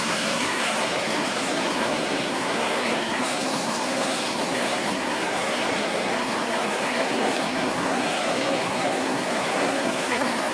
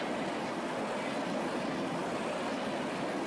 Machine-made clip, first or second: first